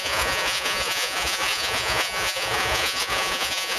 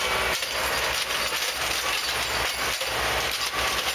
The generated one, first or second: first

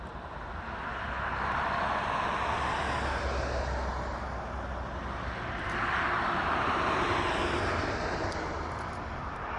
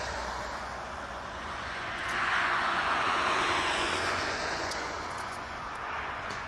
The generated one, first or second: second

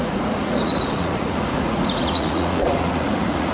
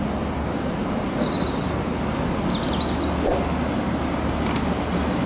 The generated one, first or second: first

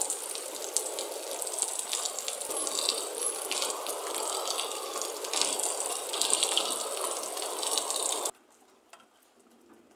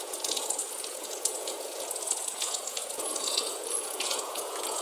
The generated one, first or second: second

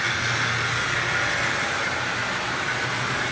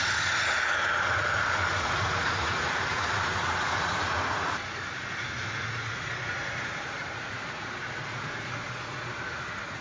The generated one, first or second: second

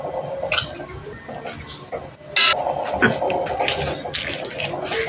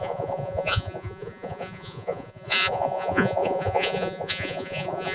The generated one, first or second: second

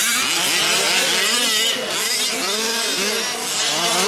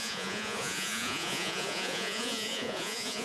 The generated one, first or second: second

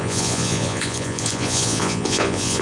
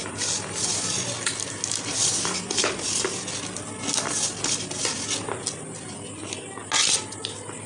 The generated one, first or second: first